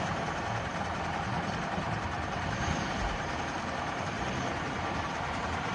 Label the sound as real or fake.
fake